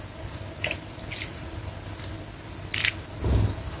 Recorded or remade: recorded